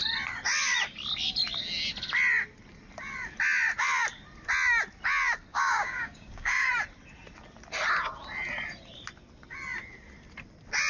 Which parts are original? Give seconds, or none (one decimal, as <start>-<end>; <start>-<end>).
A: 0.0-5.5; 6.7-10.9